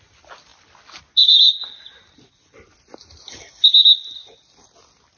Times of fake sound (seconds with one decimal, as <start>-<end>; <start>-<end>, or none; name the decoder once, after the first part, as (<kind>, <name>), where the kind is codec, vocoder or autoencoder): none